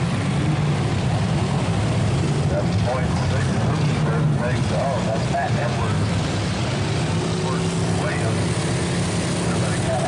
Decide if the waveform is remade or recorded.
recorded